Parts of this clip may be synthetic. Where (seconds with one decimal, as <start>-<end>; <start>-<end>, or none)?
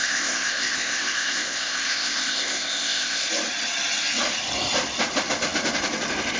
0.0-3.3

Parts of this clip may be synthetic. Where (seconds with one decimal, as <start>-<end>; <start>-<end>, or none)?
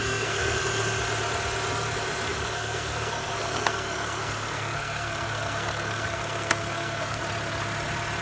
0.0-0.6; 2.3-7.2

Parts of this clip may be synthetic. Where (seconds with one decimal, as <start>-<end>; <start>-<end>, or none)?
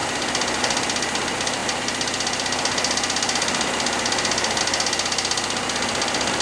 none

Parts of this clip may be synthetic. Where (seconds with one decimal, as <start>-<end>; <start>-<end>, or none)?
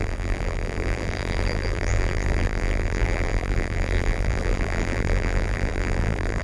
0.0-6.4